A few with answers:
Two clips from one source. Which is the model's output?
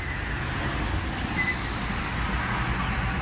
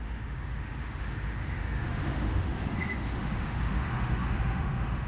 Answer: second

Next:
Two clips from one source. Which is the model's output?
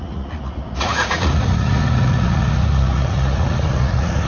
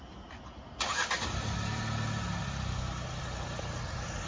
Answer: first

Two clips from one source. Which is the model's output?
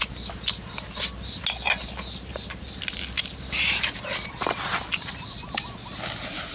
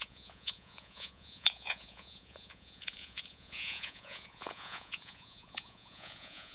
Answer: second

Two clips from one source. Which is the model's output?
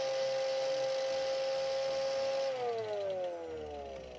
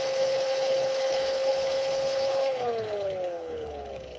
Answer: second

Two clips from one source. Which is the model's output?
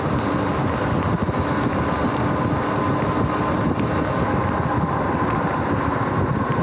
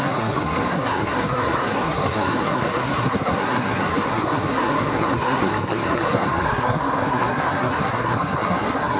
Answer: second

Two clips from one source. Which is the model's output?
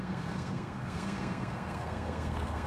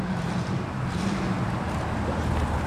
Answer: first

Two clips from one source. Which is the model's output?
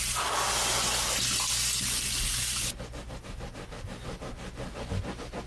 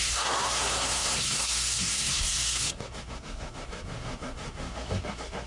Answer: second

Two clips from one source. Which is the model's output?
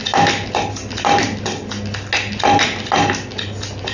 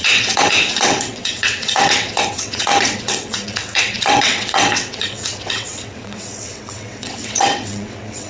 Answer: second